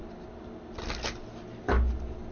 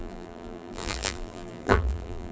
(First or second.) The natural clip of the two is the first